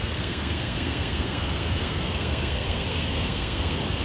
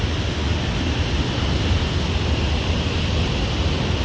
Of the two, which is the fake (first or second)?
first